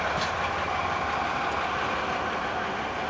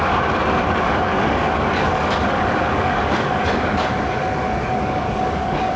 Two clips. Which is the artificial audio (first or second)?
second